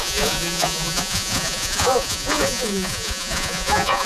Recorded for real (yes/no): no